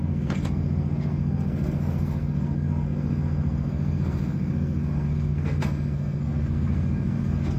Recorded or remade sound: remade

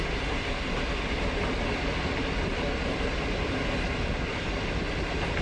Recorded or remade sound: recorded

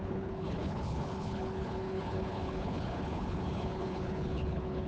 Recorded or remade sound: remade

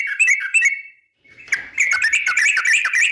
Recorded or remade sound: remade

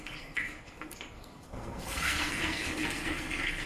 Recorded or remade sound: remade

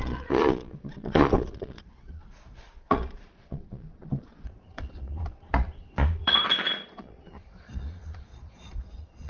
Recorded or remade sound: remade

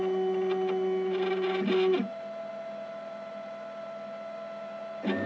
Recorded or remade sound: recorded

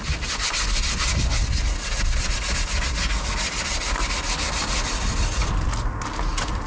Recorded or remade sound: recorded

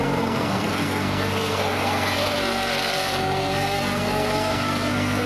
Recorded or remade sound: remade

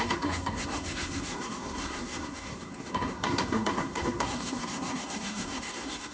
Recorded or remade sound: remade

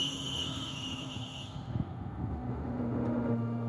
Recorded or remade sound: remade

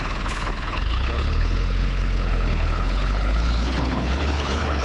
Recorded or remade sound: remade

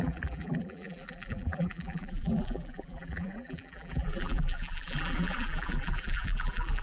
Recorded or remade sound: remade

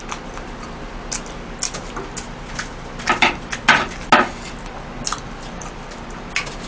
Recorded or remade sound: recorded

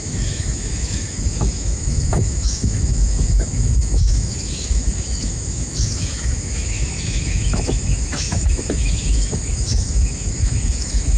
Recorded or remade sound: remade